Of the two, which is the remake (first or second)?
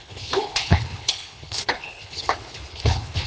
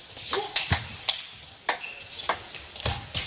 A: first